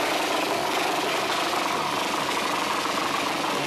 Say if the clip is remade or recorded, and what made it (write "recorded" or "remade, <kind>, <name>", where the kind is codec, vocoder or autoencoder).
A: recorded